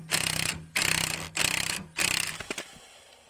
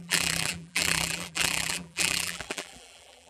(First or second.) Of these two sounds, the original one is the first